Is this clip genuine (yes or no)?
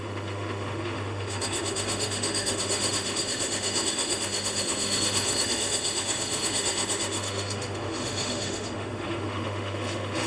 no